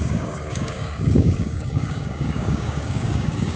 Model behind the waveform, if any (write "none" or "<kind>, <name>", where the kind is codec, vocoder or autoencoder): codec, DAC